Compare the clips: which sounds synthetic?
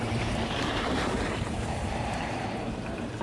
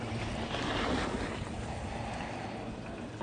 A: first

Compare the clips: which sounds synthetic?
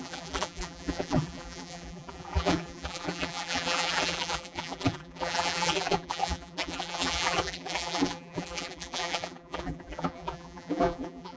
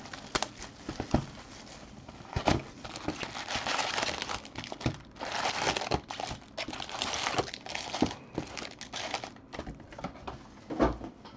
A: first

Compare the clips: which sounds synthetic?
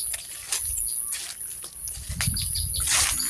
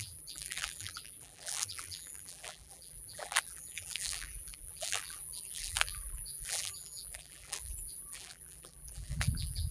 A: second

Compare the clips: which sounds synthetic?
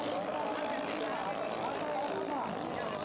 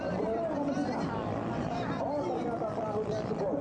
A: second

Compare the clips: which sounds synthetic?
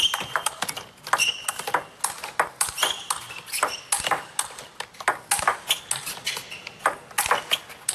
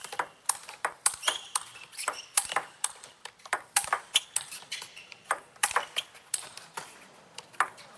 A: second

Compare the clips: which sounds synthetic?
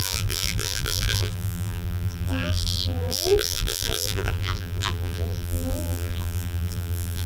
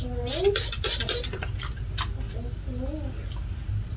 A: first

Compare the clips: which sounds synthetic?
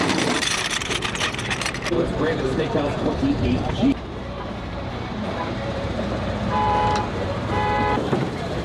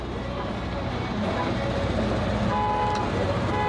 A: first